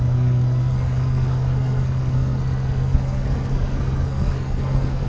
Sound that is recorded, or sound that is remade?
remade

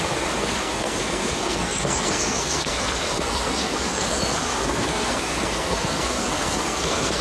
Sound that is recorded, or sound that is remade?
remade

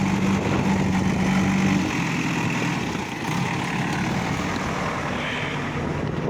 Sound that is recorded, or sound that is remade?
recorded